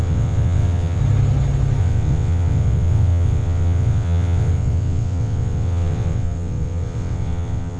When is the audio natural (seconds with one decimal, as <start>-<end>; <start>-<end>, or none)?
1.0-1.8